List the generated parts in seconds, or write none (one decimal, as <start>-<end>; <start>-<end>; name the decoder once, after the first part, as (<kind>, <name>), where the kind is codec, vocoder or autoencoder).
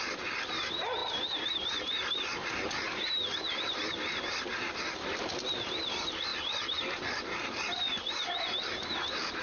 none